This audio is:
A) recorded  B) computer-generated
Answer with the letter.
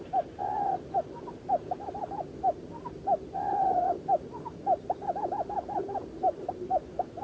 A